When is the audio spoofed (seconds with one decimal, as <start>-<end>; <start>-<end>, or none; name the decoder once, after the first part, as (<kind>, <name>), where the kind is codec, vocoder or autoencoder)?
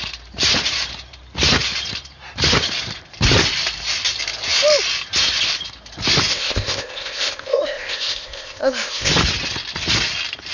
6.3-9.1 (codec, ZipCodec)